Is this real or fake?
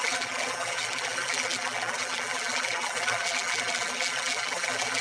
fake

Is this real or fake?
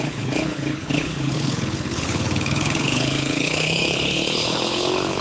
fake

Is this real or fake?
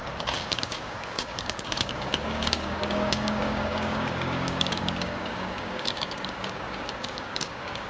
fake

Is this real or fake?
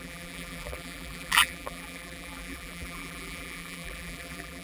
fake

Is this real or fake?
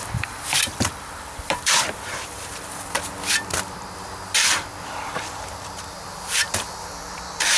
fake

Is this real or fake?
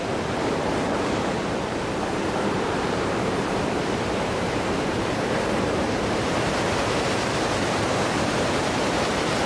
fake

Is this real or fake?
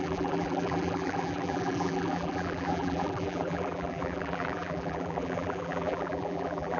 fake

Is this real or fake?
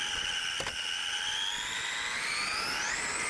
real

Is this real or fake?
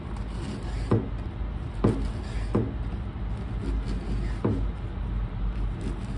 real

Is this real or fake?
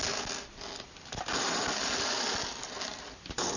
real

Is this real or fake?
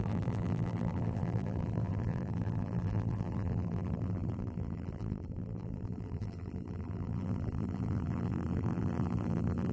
fake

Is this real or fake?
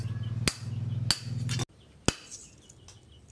real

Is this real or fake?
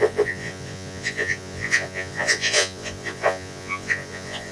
fake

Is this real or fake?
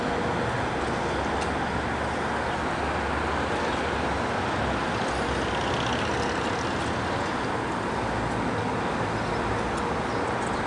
real